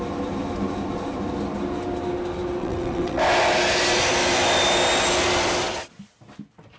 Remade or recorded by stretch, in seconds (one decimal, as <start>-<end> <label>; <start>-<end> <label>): 0.0-2.6 recorded; 2.6-3.2 remade; 3.2-6.8 recorded